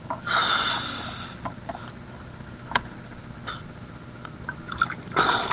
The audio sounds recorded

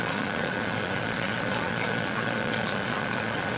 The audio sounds remade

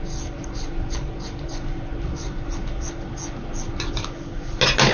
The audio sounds recorded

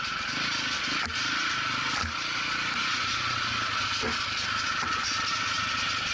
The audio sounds recorded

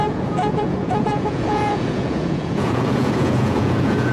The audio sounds remade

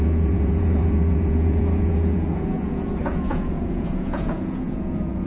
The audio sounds remade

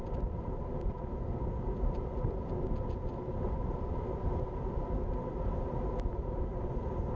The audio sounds recorded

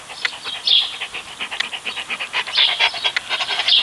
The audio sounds recorded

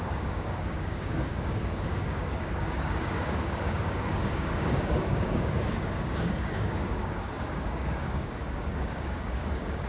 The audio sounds remade